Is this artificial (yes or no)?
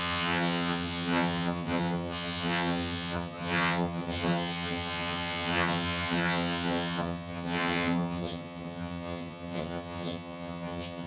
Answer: yes